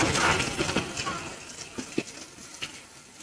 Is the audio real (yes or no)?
yes